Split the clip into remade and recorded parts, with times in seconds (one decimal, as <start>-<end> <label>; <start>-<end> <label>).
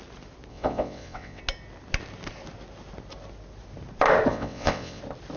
0.0-0.5 recorded; 0.5-1.4 remade; 1.4-4.3 recorded; 4.3-5.0 remade; 5.0-5.4 recorded